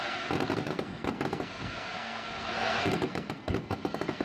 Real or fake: fake